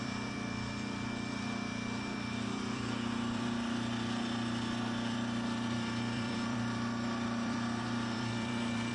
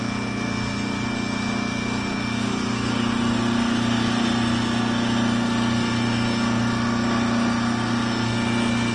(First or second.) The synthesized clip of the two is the first